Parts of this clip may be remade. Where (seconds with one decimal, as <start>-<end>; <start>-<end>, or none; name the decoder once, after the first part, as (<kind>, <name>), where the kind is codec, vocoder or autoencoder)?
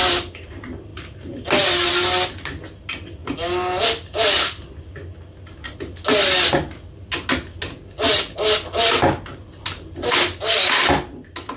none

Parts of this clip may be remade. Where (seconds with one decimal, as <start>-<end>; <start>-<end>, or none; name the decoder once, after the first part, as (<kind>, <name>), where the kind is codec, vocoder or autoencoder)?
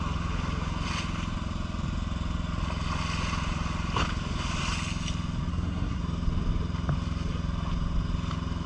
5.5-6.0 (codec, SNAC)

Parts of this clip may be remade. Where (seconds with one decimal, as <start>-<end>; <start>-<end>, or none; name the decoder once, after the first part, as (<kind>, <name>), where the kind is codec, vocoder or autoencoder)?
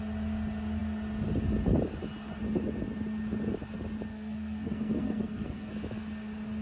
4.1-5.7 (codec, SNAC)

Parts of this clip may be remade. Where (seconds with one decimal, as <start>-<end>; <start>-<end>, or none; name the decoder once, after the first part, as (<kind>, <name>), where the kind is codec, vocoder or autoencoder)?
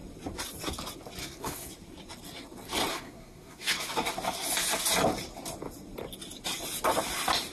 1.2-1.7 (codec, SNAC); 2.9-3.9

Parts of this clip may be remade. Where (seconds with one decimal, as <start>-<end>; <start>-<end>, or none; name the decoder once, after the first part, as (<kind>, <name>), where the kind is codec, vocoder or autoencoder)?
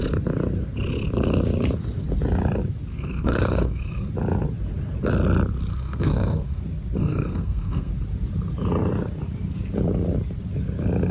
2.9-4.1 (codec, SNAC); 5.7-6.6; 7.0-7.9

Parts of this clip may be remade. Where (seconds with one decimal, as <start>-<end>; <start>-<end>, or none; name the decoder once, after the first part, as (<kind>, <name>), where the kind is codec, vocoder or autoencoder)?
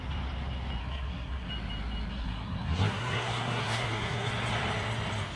0.8-1.5 (codec, SNAC); 2.1-4.3